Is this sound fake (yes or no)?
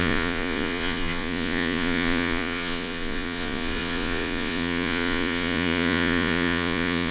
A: yes